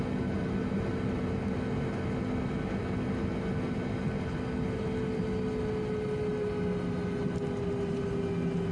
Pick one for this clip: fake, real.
real